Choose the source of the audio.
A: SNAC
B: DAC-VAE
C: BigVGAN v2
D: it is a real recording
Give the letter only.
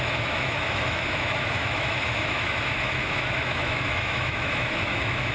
B